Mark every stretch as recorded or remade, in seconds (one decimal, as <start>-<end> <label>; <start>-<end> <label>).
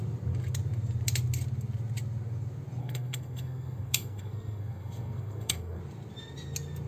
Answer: 0.0-2.8 recorded; 2.8-5.8 remade; 5.8-6.9 recorded